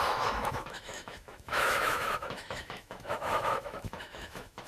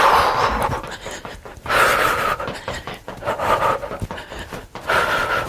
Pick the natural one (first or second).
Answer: second